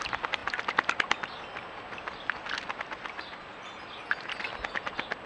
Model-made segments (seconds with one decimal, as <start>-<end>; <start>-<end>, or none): none